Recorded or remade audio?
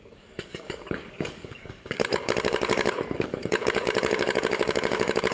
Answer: remade